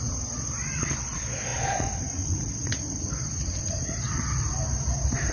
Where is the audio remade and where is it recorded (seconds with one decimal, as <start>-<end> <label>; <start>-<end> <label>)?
0.0-4.2 remade; 4.2-5.3 recorded